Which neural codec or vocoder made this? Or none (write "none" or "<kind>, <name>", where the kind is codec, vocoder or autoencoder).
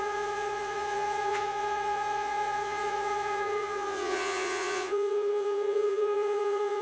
vocoder, Vocos